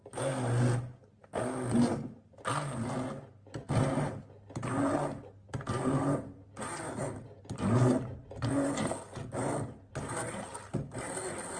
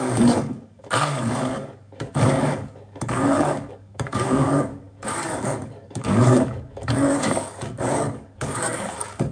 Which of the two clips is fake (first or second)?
second